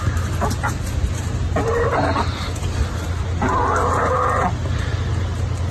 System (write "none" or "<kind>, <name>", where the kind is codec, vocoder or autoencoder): none